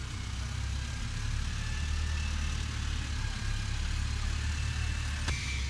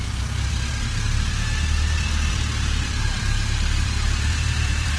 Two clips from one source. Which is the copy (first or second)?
second